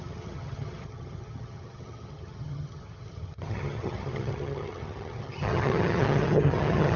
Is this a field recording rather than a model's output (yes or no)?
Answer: no